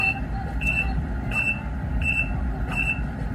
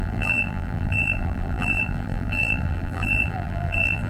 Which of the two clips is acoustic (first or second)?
first